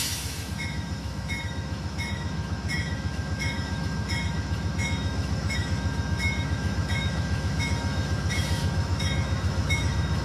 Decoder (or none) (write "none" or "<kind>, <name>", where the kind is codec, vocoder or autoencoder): autoencoder, DAC-VAE